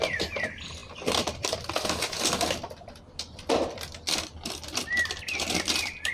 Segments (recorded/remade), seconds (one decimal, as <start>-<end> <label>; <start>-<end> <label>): 0.0-6.1 recorded